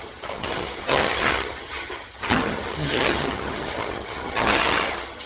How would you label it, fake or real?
fake